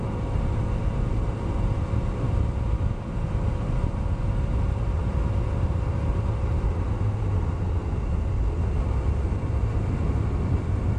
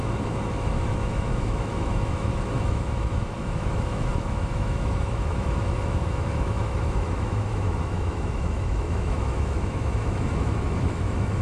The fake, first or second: second